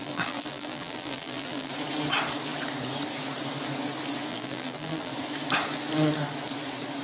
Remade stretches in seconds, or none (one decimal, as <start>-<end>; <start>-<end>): 0.0-1.7; 4.3-5.1